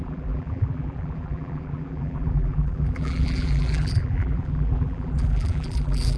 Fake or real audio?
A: fake